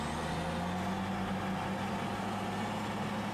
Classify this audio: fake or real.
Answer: real